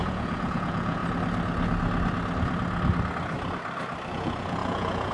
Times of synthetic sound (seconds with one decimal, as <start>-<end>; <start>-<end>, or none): 0.0-1.0; 4.1-5.1

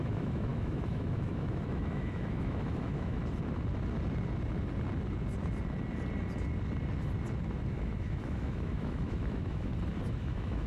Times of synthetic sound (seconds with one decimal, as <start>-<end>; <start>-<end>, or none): 0.0-3.2; 7.7-9.7; 10.2-10.7

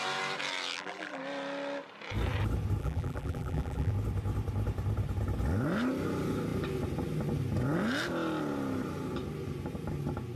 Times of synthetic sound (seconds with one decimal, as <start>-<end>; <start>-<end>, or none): 0.7-1.2; 2.8-3.9

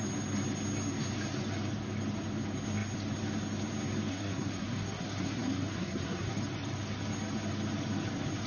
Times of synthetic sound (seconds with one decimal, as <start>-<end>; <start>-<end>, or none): 4.1-6.4

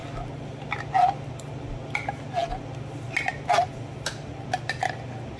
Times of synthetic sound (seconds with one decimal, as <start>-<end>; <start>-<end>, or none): none

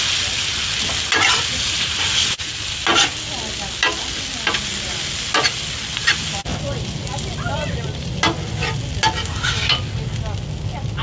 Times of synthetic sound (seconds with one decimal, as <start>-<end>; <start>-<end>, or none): none

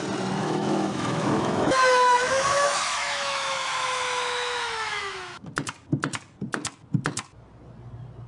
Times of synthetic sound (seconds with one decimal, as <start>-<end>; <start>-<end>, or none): 0.4-5.4

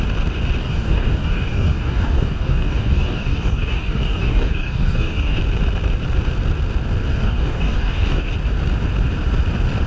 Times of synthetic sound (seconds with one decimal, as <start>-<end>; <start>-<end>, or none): 0.6-5.4; 7.1-8.3